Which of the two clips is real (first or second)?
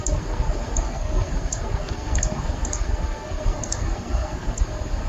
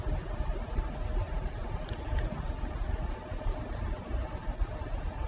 second